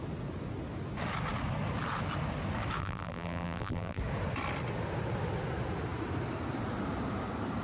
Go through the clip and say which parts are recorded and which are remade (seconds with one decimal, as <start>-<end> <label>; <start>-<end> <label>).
0.0-2.8 recorded; 2.8-4.0 remade; 4.0-7.6 recorded